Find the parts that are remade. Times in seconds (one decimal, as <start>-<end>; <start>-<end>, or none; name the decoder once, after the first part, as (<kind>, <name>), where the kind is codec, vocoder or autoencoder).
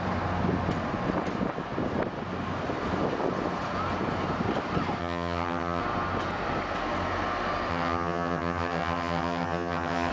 5.0-5.8 (vocoder, HiFi-GAN); 7.7-10.1